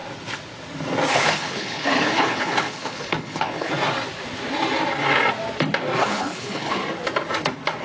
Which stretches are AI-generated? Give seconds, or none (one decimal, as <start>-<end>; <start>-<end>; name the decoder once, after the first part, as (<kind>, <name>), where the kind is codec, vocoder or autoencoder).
1.1-3.7 (codec, HILCodec); 6.0-6.8